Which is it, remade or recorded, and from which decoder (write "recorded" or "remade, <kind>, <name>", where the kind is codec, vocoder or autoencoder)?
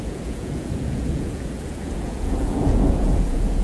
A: remade, vocoder, Vocos